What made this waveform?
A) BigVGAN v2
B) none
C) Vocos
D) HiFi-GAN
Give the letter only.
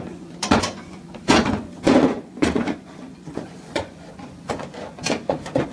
C